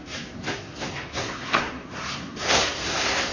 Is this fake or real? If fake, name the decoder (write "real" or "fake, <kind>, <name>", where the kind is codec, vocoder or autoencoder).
fake, codec, SNAC